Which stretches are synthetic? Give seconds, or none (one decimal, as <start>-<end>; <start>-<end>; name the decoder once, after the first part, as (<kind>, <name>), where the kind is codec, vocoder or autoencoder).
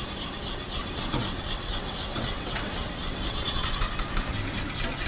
0.8-3.9 (vocoder, WaveNeXt)